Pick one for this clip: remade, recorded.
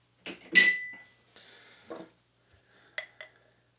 recorded